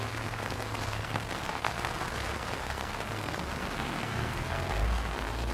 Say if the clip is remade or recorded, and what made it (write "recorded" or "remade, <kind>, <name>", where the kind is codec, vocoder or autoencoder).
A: remade, codec, SNAC